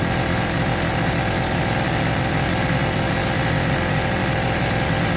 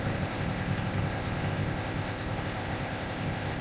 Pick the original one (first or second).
first